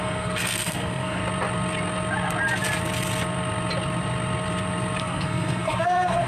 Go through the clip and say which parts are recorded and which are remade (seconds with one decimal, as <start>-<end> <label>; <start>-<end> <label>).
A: 0.0-1.2 remade; 1.2-5.0 recorded; 5.0-6.3 remade